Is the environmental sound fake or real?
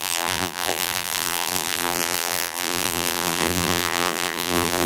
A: fake